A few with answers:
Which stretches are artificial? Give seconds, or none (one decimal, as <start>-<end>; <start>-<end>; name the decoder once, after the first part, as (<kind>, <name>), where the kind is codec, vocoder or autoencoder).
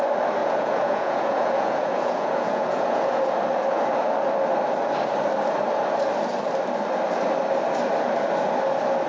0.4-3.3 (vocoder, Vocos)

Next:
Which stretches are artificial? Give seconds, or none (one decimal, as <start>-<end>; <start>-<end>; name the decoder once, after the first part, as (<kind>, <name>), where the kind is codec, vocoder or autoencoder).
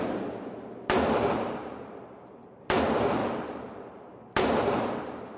1.6-2.5 (vocoder, BigVGAN v2); 3.2-4.5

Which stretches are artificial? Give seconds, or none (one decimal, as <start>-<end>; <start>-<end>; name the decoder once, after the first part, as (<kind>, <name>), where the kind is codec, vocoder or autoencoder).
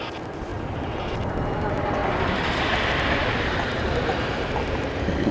0.0-5.3 (vocoder, BigVGAN v2)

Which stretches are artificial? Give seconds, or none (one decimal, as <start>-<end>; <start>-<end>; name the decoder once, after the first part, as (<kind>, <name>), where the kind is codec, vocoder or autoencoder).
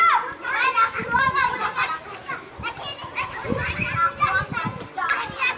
0.0-5.6 (vocoder, BigVGAN v2)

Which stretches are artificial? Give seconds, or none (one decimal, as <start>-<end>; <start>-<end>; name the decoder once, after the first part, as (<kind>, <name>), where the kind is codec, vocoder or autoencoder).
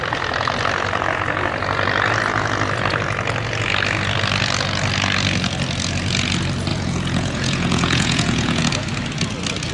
6.7-8.6 (vocoder, Vocos)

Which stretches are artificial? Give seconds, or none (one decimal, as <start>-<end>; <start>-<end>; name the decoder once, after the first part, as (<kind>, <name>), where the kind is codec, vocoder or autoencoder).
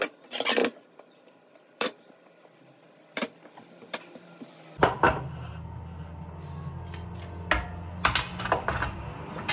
0.6-4.6 (vocoder, BigVGAN v2)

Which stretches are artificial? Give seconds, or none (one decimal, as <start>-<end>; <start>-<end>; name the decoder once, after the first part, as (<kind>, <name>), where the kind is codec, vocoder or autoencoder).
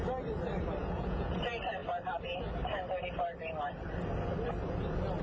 0.8-1.4 (vocoder, Vocos)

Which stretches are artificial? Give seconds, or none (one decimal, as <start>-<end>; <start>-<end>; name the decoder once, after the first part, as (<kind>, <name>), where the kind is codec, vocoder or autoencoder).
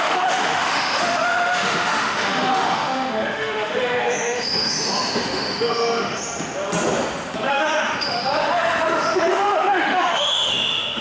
0.0-6.2 (autoencoder, DAC-VAE); 7.5-11.0